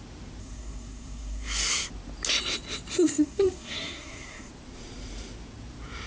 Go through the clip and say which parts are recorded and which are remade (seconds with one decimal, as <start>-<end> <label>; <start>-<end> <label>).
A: 0.0-0.4 recorded; 0.4-1.9 remade; 1.9-2.9 recorded; 2.9-4.5 remade; 4.5-6.1 recorded